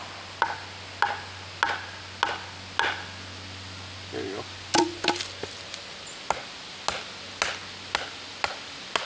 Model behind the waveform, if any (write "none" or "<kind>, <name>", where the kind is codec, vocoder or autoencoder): none